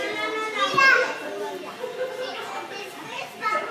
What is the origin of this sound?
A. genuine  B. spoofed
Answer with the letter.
A